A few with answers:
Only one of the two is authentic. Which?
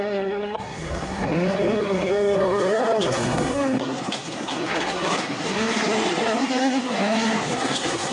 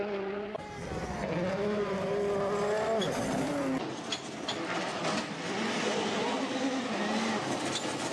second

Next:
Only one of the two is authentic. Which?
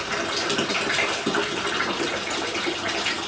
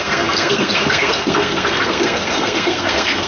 first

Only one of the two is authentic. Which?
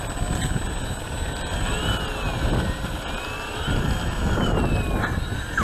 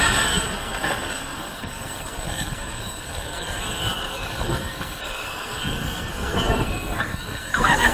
first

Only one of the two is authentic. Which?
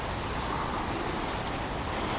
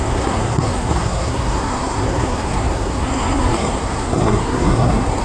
first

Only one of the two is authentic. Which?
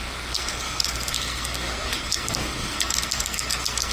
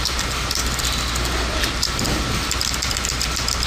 second